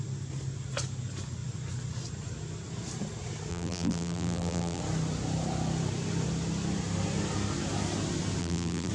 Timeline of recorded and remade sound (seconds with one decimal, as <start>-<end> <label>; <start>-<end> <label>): 0.0-3.5 recorded; 3.5-4.8 remade; 4.8-8.4 recorded; 8.4-8.9 remade